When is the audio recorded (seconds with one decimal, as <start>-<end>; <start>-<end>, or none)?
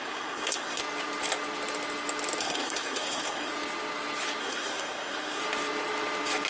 0.8-2.4; 3.5-4.4; 5.4-6.5